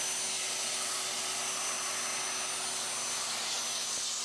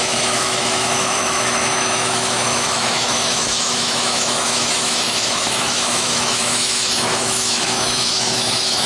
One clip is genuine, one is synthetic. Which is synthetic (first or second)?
second